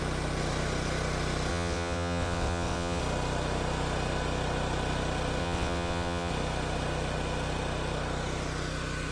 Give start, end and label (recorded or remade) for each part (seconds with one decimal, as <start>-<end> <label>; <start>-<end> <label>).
0.0-1.5 recorded; 1.5-3.0 remade; 3.0-5.4 recorded; 5.4-6.3 remade; 6.3-9.1 recorded